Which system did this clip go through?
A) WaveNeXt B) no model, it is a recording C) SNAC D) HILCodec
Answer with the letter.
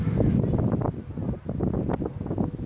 B